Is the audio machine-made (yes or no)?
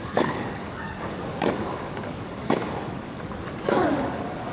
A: yes